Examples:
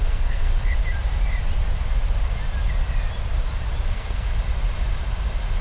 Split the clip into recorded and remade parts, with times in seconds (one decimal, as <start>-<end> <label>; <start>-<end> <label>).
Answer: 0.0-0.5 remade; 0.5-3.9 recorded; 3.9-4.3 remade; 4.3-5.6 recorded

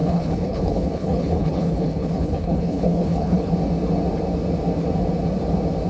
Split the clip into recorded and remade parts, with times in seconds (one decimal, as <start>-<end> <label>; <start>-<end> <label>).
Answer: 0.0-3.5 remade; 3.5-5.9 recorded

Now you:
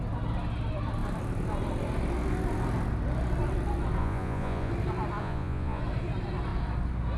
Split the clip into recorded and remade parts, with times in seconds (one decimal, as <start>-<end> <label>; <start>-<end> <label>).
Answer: 0.0-4.0 recorded; 4.0-4.7 remade; 4.7-5.2 recorded; 5.2-5.8 remade; 5.8-7.2 recorded

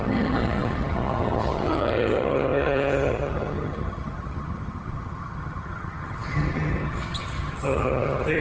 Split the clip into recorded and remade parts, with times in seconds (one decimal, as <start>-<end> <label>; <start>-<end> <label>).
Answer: 0.0-8.4 remade

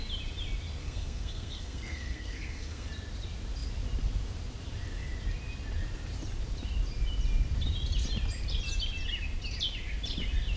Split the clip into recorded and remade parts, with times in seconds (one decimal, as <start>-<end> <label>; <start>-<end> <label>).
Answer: 0.0-0.8 recorded; 0.8-2.9 remade; 2.9-10.6 recorded